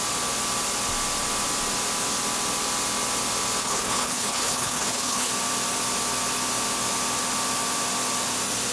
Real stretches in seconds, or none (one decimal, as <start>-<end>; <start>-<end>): 0.0-3.6; 5.3-8.7